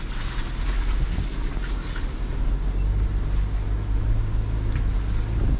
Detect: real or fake real